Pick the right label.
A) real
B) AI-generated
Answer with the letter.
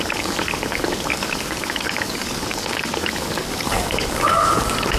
B